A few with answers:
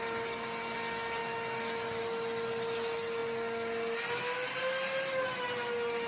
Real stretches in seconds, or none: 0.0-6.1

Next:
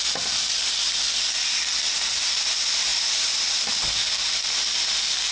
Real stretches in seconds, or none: 0.0-5.3

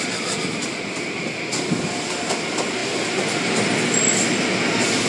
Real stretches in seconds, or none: 0.0-5.1

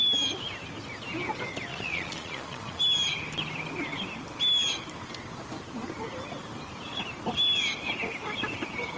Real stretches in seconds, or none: 0.0-1.7; 2.8-9.0

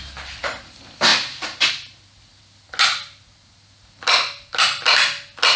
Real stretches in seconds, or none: 0.0-5.6

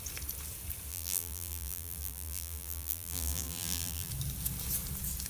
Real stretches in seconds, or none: 0.0-0.9; 4.1-5.3

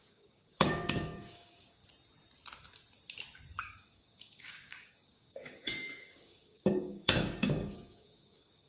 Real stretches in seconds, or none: 1.8-3.6

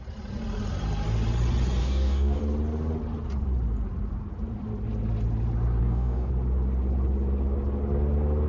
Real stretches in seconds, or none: 0.0-1.8; 2.4-5.8; 6.3-8.5